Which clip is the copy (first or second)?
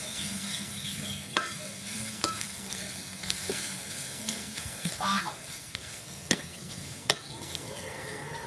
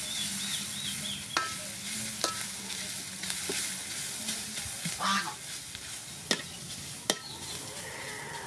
first